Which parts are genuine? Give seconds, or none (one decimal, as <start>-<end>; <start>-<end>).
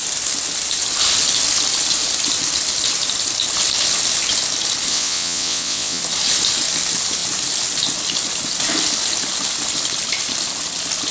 0.0-4.9; 6.0-11.1